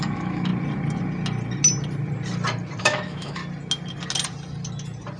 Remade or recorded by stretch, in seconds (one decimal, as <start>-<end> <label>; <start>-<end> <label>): 0.0-0.5 remade; 0.5-2.8 recorded; 2.8-3.4 remade; 3.4-5.2 recorded